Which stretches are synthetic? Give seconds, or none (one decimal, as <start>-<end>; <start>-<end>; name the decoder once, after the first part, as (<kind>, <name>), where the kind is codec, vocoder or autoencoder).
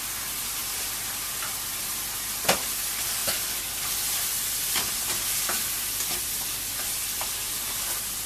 none